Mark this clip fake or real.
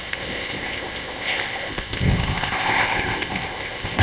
fake